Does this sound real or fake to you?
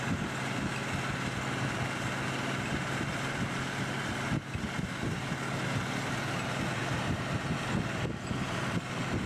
real